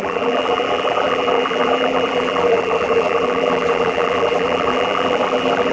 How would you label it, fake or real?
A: fake